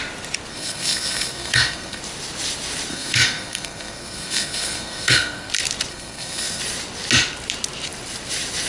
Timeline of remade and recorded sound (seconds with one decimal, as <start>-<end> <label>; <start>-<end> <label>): 0.0-0.5 recorded; 0.5-2.0 remade; 2.0-2.9 recorded; 2.9-5.5 remade; 5.5-5.9 recorded; 5.9-6.6 remade; 6.6-8.7 recorded